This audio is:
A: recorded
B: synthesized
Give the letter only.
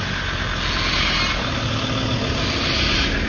A